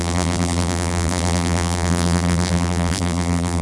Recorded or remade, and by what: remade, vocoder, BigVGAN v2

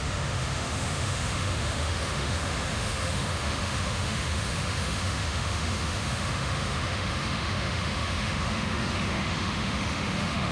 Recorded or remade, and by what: remade, autoencoder, DAC-VAE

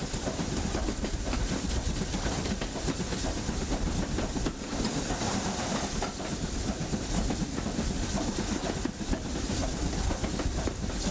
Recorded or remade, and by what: recorded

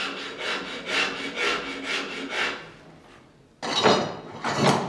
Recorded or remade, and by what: recorded